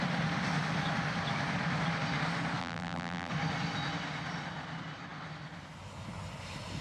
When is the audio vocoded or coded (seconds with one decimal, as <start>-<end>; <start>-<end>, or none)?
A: 2.6-3.3